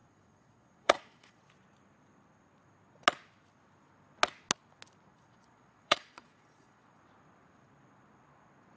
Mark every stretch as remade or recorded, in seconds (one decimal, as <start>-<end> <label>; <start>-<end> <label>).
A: 0.0-1.4 remade; 1.4-5.1 recorded; 5.1-7.0 remade; 7.0-8.8 recorded